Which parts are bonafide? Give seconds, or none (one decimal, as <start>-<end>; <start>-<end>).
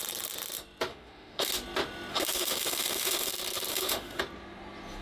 0.0-0.9; 1.5-2.1; 3.3-3.7; 4.2-5.0